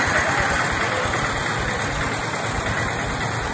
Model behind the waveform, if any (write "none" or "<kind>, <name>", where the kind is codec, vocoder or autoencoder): none